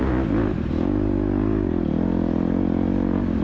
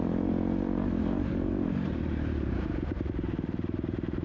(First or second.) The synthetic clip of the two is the second